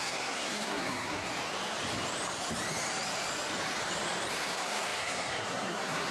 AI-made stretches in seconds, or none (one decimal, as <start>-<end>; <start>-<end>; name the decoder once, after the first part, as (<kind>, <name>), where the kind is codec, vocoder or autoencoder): 0.0-1.3 (codec, SNAC); 4.3-6.1